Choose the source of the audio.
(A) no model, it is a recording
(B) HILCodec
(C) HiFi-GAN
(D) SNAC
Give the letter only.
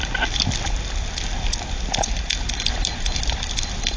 A